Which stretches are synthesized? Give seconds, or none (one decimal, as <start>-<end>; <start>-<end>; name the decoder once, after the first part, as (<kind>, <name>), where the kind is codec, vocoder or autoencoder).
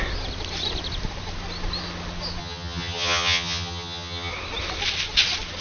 2.4-4.3 (vocoder, HiFi-GAN)